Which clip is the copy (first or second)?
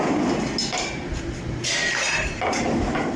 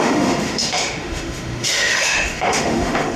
second